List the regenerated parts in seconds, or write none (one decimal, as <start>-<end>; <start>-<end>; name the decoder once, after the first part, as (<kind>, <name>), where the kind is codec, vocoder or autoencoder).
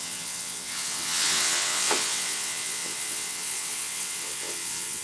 0.0-5.0 (vocoder, WaveNeXt)